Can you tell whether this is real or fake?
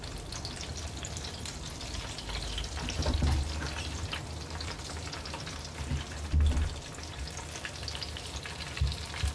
real